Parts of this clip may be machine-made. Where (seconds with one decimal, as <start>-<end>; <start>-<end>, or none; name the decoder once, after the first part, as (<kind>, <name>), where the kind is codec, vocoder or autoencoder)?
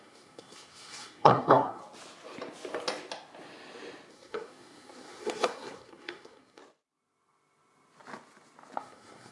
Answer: 0.0-1.8 (codec, SNAC); 4.1-6.6; 8.8-9.3